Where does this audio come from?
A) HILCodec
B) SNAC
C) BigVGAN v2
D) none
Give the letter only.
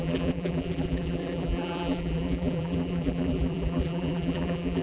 C